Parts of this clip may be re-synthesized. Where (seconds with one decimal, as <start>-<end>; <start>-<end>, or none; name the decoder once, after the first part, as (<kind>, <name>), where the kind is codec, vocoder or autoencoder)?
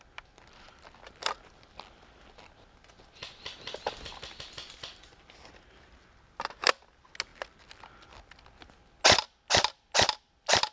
none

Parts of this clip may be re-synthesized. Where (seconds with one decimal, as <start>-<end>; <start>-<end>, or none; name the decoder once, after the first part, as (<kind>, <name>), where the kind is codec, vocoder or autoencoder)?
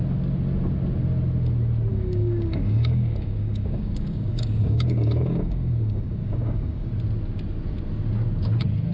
1.9-6.9 (codec, DAC)